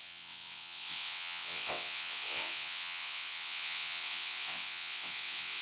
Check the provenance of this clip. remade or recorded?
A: remade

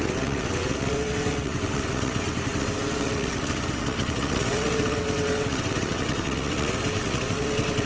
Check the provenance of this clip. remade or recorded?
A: remade